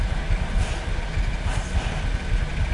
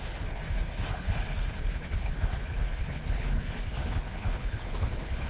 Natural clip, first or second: first